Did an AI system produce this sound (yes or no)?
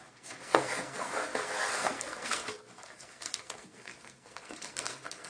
yes